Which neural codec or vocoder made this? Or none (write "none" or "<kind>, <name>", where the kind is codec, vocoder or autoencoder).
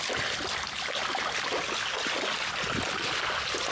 none